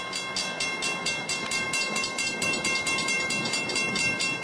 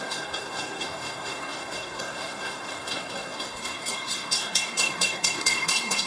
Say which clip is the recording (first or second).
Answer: first